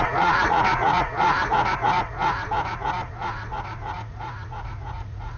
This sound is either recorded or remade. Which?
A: remade